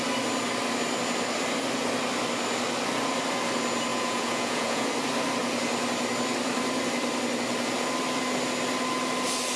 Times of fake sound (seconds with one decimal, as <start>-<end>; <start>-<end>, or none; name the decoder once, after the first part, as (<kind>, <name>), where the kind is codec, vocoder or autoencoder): 3.9-4.9 (vocoder, Vocos)